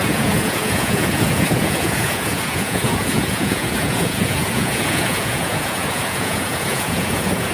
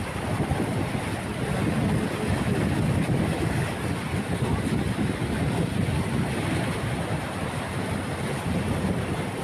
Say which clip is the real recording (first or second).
second